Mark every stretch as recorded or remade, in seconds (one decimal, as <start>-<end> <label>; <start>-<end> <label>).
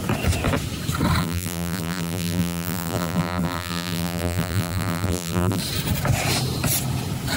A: 0.0-1.2 recorded; 1.2-5.6 remade; 5.6-7.4 recorded